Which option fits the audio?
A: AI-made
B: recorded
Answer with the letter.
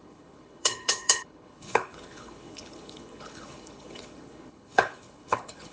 A